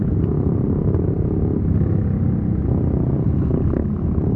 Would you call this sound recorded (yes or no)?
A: yes